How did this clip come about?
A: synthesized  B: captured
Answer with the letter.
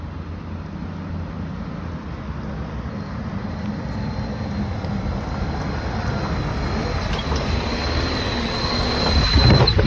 B